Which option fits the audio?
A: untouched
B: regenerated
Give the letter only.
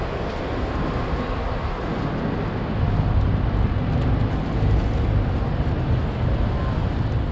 A